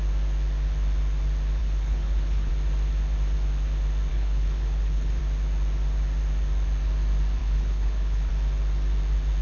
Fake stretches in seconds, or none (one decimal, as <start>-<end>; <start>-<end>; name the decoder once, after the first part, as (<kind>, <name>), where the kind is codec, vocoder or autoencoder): 1.6-2.5 (codec, HILCodec); 4.1-5.2; 7.4-8.3